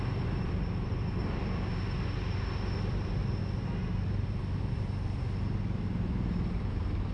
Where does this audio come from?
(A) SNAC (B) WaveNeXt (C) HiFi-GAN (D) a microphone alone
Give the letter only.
D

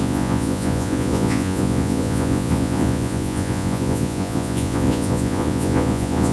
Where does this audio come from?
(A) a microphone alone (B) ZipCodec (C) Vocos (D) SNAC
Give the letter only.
C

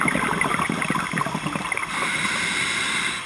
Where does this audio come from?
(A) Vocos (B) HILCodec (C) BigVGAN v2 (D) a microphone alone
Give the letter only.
D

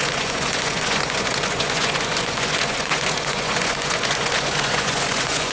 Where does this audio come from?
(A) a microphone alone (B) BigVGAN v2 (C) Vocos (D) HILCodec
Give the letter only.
C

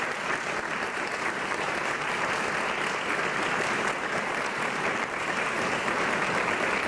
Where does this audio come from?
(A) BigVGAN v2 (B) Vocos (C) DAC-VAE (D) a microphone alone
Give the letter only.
A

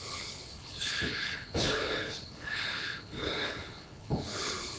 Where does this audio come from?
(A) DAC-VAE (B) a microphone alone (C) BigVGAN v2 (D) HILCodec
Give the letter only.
D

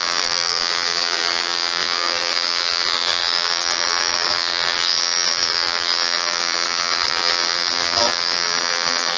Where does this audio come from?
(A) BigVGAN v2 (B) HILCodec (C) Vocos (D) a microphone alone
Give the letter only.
A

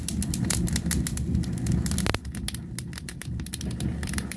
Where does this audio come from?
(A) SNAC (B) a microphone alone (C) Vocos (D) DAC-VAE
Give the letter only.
B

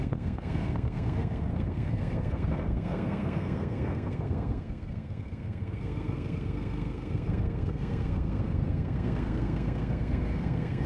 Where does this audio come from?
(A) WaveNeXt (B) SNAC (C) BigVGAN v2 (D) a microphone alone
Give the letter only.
B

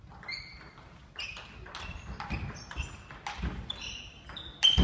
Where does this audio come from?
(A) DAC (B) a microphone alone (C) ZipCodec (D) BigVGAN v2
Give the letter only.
B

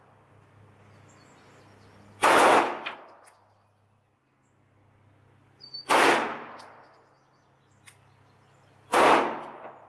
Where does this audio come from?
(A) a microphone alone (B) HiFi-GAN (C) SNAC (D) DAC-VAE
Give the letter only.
A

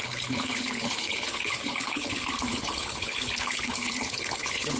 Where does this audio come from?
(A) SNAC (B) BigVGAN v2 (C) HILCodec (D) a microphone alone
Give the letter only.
C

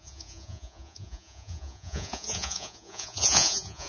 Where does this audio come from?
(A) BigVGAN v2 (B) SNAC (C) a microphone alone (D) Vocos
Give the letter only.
D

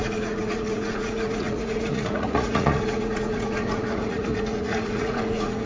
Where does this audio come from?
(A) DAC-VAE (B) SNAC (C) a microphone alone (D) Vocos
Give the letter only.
D